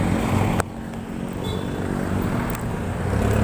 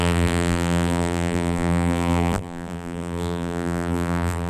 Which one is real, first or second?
first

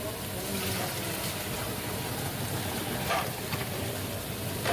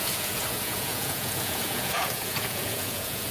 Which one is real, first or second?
first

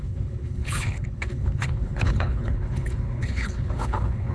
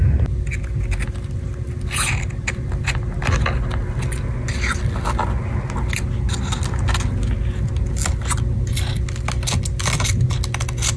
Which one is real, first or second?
second